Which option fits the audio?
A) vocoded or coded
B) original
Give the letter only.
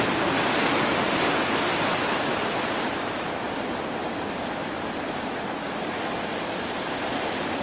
A